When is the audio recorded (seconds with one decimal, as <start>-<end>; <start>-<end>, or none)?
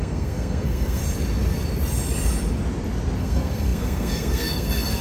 1.0-3.2